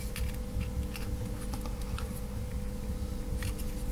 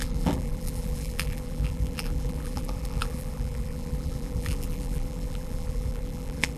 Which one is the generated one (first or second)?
second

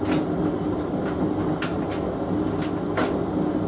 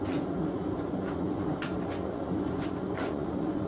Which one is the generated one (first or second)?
second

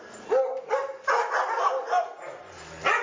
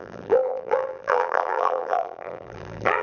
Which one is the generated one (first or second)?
second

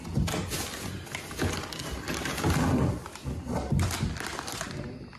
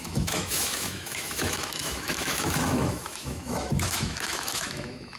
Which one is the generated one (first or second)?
second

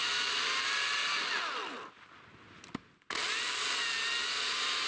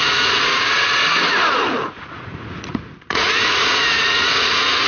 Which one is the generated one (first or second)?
second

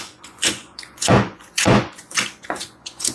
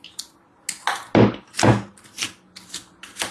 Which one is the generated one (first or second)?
first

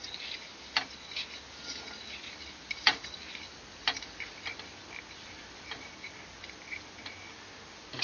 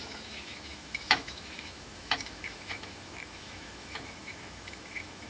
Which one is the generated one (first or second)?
second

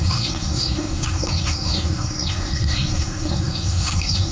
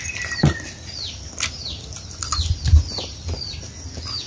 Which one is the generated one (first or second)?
first